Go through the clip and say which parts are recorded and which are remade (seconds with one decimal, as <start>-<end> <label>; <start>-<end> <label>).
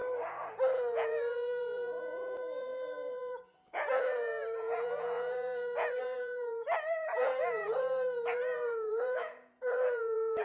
0.0-0.7 recorded; 0.7-10.4 remade